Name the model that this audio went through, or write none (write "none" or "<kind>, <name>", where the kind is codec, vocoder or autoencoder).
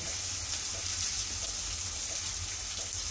none